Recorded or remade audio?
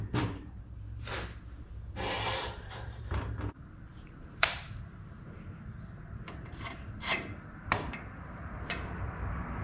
remade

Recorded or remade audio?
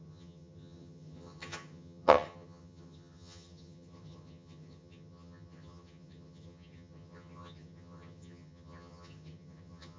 remade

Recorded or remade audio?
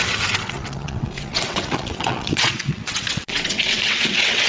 remade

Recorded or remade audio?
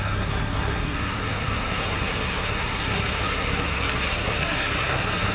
remade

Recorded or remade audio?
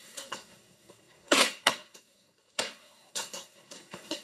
remade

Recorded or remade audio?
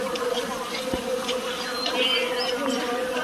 recorded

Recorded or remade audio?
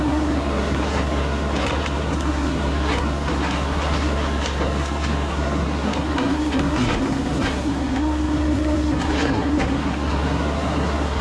remade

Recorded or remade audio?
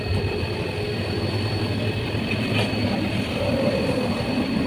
remade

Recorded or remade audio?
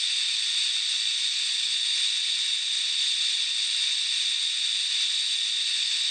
recorded